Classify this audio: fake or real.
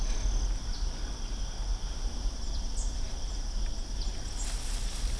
real